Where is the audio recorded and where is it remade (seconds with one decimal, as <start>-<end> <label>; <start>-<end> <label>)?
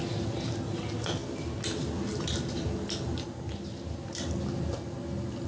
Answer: 0.0-5.5 recorded